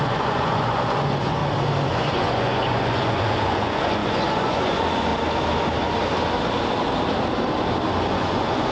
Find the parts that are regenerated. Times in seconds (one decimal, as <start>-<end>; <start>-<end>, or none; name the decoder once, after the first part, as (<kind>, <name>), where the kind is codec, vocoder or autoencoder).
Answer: 0.0-1.4 (vocoder, Vocos); 1.9-5.1; 8.1-8.7